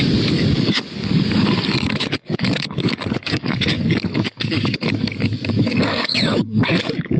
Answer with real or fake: fake